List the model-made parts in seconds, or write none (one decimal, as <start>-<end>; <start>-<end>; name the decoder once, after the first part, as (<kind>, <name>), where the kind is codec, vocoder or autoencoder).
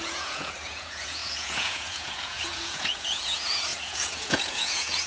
0.0-5.1 (vocoder, Vocos)